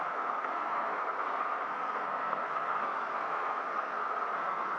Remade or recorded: remade